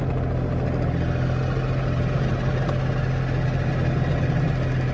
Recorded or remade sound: recorded